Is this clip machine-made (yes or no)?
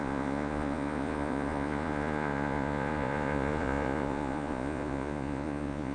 yes